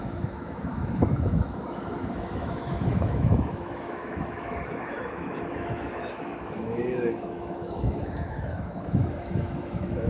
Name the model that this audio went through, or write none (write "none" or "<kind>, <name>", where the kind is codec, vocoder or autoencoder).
autoencoder, DAC-VAE